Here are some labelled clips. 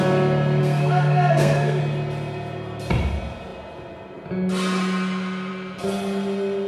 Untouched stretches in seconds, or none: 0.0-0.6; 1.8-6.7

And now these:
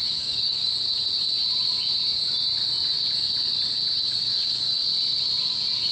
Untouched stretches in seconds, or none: 0.7-4.2; 4.8-5.9

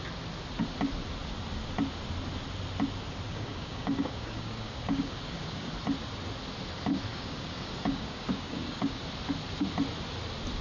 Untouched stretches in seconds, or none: 0.0-3.3; 5.7-7.1; 9.0-10.6